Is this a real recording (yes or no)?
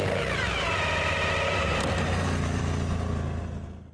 yes